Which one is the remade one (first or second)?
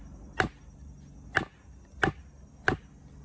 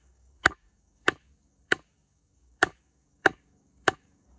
second